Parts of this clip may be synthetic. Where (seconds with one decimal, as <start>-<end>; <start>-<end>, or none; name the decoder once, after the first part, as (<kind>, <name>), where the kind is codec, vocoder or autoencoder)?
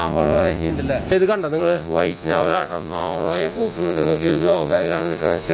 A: 0.0-0.7 (vocoder, Vocos); 1.6-5.5